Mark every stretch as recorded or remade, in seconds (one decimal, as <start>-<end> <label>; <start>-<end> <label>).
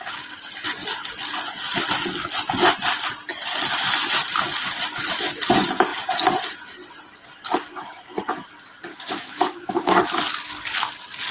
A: 0.0-8.9 recorded; 8.9-10.0 remade; 10.0-11.3 recorded